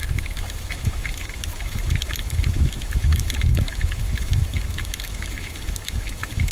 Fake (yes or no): yes